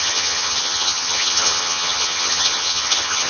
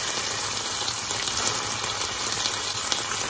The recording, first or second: second